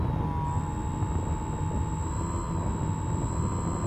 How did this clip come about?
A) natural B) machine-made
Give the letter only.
A